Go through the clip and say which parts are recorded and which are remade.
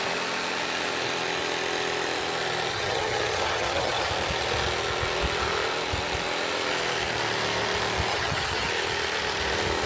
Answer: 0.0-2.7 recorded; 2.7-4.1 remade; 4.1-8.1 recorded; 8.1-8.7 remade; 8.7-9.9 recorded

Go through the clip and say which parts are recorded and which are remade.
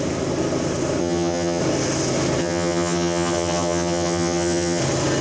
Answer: 0.0-1.0 recorded; 1.0-1.6 remade; 1.6-2.4 recorded; 2.4-4.8 remade; 4.8-5.2 recorded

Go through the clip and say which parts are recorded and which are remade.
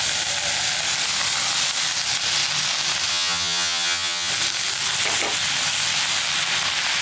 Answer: 0.0-3.1 recorded; 3.1-4.3 remade; 4.3-7.0 recorded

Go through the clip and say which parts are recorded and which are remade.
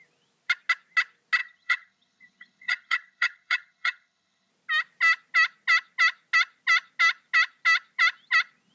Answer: 0.0-1.4 recorded; 1.4-4.5 remade; 4.5-8.7 recorded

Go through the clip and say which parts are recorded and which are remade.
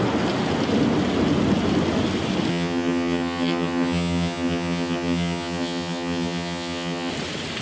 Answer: 0.0-2.5 recorded; 2.5-7.1 remade; 7.1-7.6 recorded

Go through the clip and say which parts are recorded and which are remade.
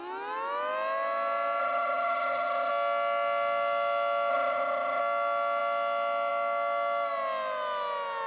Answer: 0.0-1.6 recorded; 1.6-2.7 remade; 2.7-4.3 recorded; 4.3-5.0 remade; 5.0-8.3 recorded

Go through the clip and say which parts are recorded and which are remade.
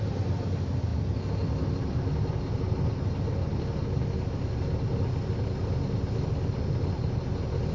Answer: 0.0-7.7 recorded